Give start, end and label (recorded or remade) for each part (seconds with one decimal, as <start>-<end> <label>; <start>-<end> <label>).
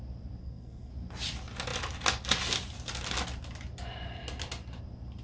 0.0-0.4 recorded; 0.4-0.9 remade; 0.9-5.2 recorded